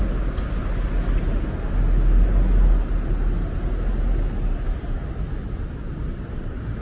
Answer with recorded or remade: recorded